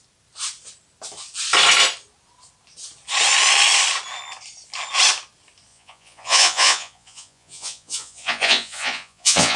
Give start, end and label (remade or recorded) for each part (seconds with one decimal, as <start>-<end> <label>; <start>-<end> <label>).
0.0-5.7 recorded; 5.7-9.6 remade